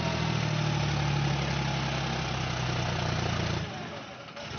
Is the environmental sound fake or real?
real